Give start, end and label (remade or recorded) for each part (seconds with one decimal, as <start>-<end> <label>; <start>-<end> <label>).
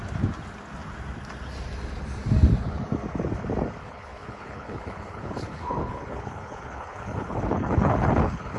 0.0-3.8 recorded; 3.8-8.6 remade